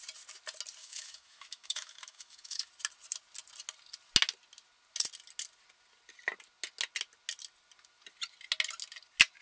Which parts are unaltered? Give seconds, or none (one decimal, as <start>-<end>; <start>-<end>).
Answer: 0.0-0.8; 2.7-9.4